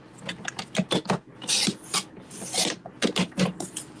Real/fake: real